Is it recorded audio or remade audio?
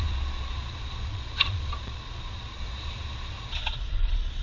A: remade